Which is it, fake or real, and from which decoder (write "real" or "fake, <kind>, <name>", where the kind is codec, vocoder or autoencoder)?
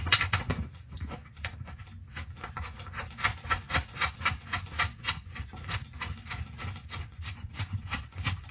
fake, vocoder, Vocos